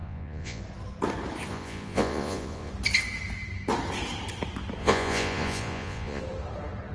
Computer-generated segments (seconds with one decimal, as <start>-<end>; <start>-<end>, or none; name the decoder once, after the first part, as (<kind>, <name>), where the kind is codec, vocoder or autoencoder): 0.0-0.6 (vocoder, Vocos); 1.5-2.7; 4.8-6.2

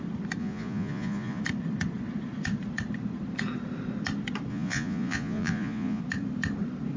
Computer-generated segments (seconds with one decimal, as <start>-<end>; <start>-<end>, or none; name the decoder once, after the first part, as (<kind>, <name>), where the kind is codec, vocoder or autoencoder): 0.4-1.4 (vocoder, Vocos); 4.5-6.0

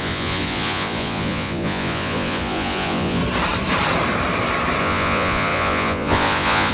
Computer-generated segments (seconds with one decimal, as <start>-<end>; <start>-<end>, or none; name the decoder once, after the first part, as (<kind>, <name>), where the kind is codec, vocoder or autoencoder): 0.0-3.2 (vocoder, Vocos); 4.8-6.7

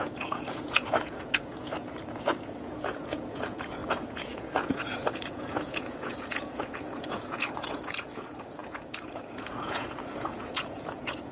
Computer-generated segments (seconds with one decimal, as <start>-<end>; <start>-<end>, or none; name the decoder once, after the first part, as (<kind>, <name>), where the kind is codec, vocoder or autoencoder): 0.0-11.3 (vocoder, Vocos)

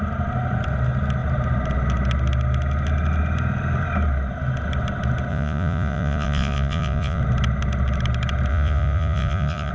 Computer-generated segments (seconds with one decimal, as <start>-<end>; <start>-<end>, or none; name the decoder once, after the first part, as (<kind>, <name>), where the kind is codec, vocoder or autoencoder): 5.3-7.2 (vocoder, Vocos); 8.5-9.7

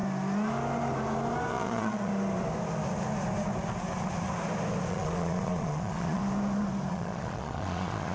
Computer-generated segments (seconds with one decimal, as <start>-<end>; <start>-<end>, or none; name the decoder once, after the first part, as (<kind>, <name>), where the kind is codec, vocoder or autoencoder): 1.5-2.1 (vocoder, Vocos); 4.9-6.2; 6.9-8.1

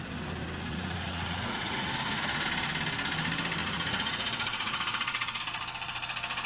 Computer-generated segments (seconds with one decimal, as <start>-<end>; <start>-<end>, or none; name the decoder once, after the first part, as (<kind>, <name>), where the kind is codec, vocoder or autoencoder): 0.7-1.9 (vocoder, Vocos); 3.6-5.4